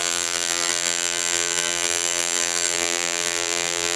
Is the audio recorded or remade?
remade